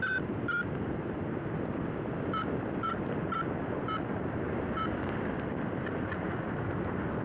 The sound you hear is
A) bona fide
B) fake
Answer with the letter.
A